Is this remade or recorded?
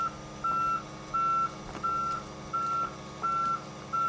recorded